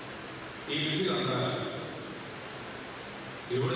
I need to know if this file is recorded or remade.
recorded